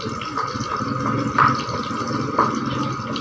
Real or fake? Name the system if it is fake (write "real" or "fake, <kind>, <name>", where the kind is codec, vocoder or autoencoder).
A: real